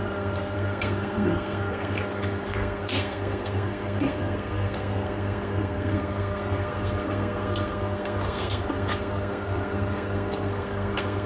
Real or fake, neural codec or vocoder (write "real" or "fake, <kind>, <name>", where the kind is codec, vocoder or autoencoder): fake, codec, SNAC